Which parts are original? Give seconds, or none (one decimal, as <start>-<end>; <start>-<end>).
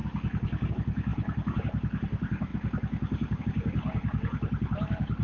0.0-0.7